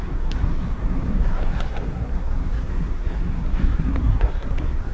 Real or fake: fake